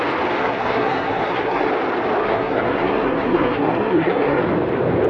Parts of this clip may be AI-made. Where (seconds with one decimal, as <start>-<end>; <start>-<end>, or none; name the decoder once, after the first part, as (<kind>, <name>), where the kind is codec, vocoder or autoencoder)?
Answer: 0.4-1.7 (codec, SNAC); 2.2-4.4